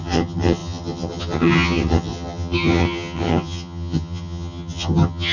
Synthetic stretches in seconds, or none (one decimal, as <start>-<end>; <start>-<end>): 0.0-5.3